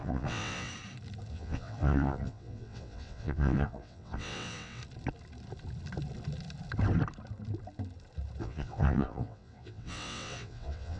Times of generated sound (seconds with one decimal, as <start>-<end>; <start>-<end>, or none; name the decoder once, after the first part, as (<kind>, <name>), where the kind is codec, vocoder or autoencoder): 0.0-0.7 (vocoder, WaveNeXt); 1.3-4.8; 8.4-11.0